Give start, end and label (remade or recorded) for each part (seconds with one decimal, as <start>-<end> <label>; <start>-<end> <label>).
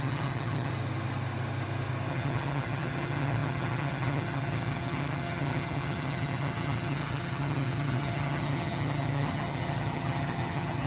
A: 0.0-0.7 remade; 0.7-2.1 recorded; 2.1-10.9 remade